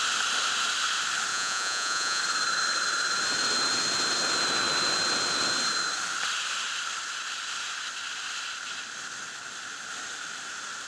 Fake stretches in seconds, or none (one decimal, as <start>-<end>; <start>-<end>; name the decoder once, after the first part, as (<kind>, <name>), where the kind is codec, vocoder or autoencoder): 1.3-2.2 (vocoder, Vocos)